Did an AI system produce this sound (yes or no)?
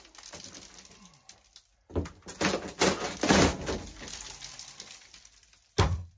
no